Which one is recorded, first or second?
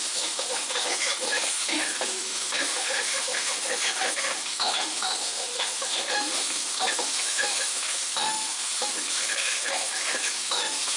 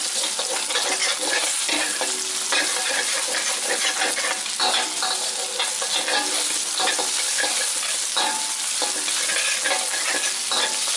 second